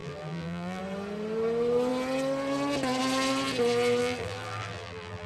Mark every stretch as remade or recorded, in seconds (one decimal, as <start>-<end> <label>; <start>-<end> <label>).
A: 0.0-0.8 remade; 0.8-4.0 recorded; 4.0-5.3 remade